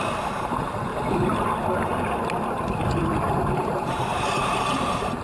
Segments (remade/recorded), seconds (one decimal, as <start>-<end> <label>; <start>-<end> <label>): 0.0-0.9 remade; 0.9-3.4 recorded; 3.4-5.2 remade